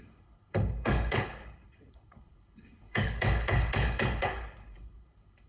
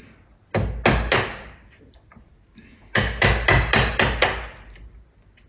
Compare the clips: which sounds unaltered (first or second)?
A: second